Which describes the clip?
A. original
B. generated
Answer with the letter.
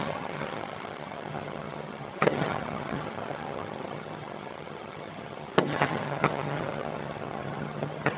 B